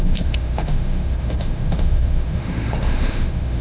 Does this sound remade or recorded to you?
remade